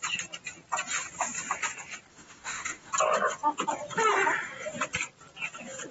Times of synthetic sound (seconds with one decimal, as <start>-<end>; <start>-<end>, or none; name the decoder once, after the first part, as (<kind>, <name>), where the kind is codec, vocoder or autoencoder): 2.1-2.9 (autoencoder, DAC-VAE)